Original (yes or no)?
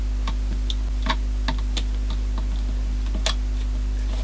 yes